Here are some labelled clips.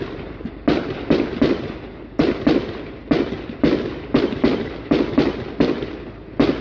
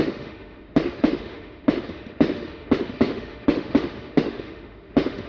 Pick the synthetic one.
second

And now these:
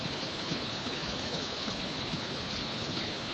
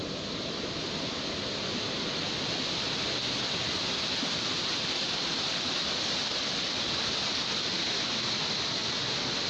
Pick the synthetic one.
first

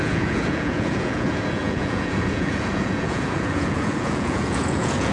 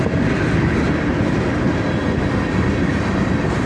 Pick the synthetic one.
first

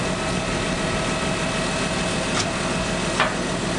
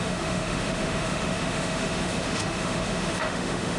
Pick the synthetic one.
second